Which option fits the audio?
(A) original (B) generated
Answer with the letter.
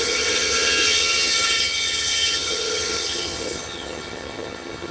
B